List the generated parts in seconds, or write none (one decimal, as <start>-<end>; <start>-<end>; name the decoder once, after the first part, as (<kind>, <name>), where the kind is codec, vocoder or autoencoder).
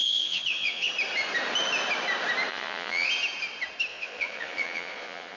0.0-0.9 (vocoder, Vocos); 2.5-3.1; 3.9-5.4